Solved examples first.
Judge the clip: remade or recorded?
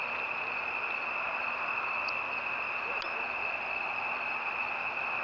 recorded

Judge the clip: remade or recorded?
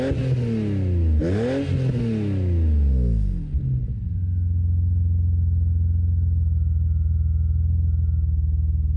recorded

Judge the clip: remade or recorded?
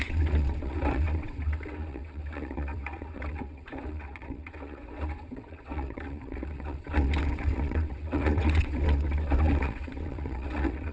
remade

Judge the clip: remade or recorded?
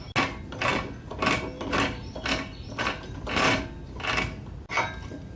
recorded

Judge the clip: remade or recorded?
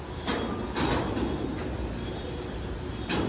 recorded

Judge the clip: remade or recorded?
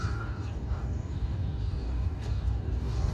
remade